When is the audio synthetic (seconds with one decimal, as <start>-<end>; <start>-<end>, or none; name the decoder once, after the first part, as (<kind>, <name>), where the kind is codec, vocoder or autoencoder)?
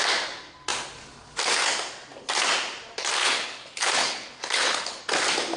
3.2-5.0 (codec, HILCodec)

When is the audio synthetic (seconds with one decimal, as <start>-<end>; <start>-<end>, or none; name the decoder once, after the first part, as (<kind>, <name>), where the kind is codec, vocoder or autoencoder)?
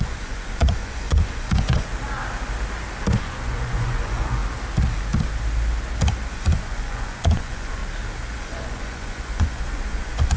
0.0-1.9 (vocoder, Vocos); 3.2-4.4; 6.3-7.8; 8.4-10.4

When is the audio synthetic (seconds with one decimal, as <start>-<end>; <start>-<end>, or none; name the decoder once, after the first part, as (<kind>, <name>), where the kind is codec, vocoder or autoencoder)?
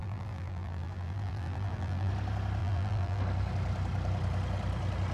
0.0-2.1 (vocoder, BigVGAN v2); 2.6-3.2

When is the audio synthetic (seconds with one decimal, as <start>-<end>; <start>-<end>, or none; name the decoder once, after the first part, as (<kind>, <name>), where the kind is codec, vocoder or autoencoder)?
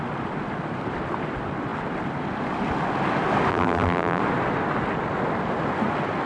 3.5-4.2 (vocoder, BigVGAN v2)